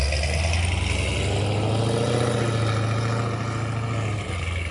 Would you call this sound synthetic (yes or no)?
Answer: no